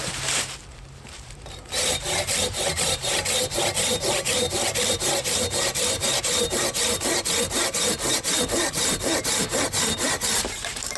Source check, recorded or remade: remade